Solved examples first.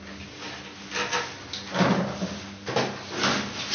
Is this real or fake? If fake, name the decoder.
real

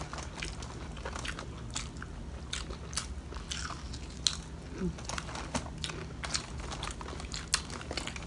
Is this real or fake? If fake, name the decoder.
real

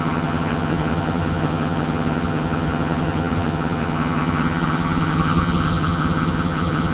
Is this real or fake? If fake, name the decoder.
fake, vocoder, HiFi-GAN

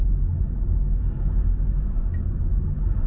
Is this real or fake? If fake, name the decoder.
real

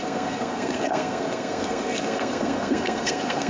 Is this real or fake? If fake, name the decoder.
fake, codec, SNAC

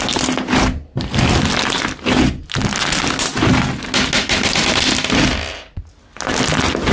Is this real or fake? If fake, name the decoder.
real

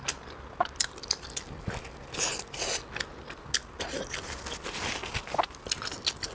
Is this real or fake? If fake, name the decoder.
real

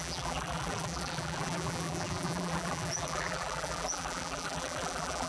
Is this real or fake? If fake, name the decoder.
fake, vocoder, BigVGAN v2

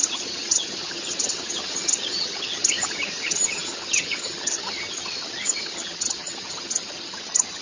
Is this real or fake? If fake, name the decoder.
fake, vocoder, HiFi-GAN